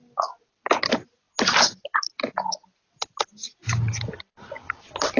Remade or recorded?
recorded